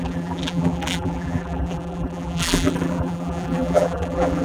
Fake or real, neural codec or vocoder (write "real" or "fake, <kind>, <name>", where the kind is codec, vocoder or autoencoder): fake, vocoder, BigVGAN v2